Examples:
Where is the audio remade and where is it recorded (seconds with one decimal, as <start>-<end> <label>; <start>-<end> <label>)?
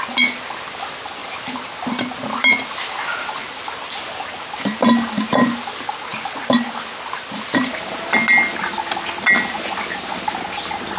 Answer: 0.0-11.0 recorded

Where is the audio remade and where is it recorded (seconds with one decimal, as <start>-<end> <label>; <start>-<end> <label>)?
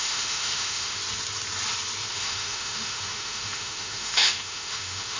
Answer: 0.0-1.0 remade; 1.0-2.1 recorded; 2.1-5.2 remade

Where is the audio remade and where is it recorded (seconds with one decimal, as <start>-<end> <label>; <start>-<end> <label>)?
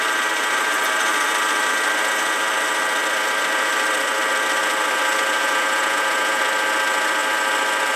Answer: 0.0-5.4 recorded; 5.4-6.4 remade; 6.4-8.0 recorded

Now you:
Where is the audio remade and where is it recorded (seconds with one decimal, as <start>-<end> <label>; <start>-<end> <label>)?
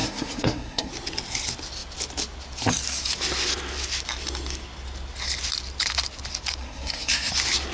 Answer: 0.0-0.9 remade; 0.9-6.6 recorded; 6.6-7.3 remade; 7.3-7.7 recorded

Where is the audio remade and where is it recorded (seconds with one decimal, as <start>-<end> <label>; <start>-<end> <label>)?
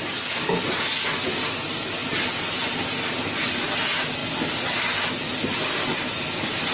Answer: 0.0-6.7 recorded